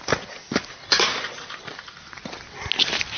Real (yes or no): yes